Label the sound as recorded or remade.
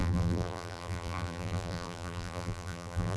remade